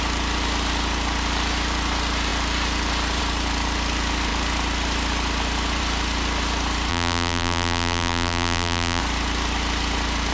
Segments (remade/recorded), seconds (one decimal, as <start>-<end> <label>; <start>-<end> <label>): 0.0-6.9 recorded; 6.9-9.0 remade; 9.0-10.3 recorded